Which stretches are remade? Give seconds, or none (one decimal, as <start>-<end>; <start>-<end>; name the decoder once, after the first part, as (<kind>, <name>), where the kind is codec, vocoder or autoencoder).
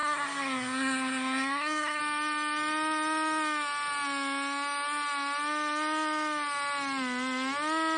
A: 0.0-2.0 (codec, SNAC)